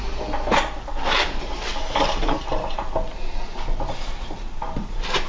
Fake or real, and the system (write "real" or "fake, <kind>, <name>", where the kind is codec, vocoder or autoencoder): real